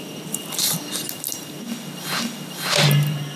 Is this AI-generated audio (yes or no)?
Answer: no